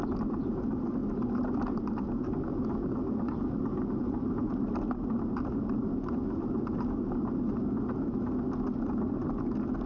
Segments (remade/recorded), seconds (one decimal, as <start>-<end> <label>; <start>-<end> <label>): 0.0-9.9 recorded

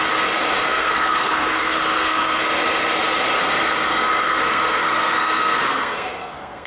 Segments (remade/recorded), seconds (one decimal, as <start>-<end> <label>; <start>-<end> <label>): 0.0-0.7 recorded; 0.7-2.4 remade; 2.4-3.9 recorded; 3.9-6.7 remade

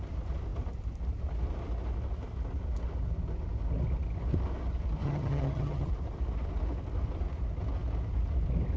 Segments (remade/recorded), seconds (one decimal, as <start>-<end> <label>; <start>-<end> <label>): 0.0-5.0 recorded; 5.0-5.9 remade; 5.9-8.8 recorded

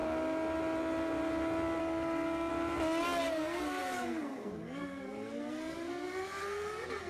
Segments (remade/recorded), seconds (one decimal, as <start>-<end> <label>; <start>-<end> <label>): 0.0-1.8 recorded; 1.8-2.5 remade; 2.5-3.3 recorded; 3.3-7.1 remade

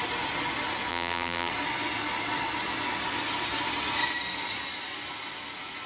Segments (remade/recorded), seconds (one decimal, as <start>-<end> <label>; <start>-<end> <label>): 0.0-0.9 recorded; 0.9-1.5 remade; 1.5-5.9 recorded

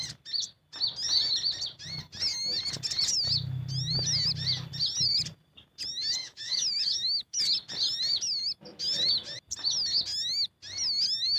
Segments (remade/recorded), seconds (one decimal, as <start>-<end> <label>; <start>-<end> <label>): 0.0-6.2 recorded; 6.2-7.4 remade; 7.4-11.4 recorded